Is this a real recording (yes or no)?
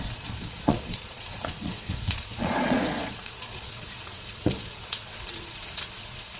no